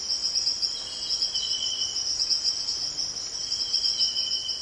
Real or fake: real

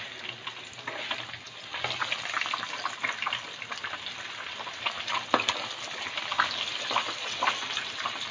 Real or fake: real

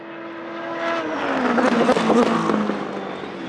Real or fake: real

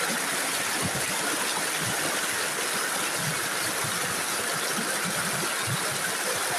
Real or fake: real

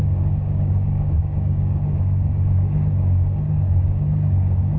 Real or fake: fake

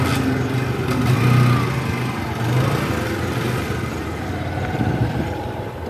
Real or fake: real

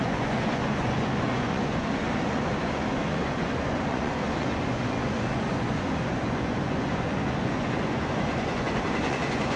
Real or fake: fake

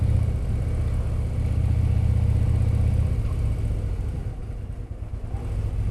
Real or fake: real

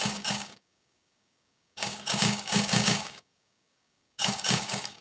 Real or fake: fake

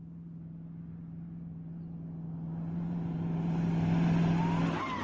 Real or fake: real